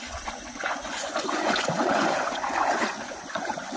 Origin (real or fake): fake